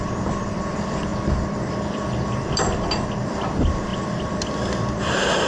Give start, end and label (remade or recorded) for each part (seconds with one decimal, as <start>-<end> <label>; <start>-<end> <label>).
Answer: 0.0-1.1 remade; 1.1-1.7 recorded; 1.7-5.5 remade